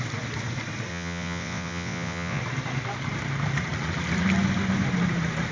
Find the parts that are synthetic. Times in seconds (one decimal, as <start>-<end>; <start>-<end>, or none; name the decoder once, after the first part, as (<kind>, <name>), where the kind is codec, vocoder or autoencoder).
0.9-2.4 (vocoder, WaveNeXt)